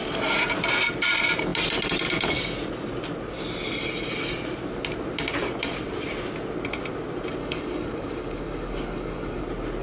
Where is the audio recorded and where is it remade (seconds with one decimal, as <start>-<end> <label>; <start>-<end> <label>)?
0.0-7.4 recorded; 7.4-9.4 remade; 9.4-9.8 recorded